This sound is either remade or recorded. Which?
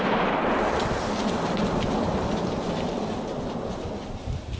recorded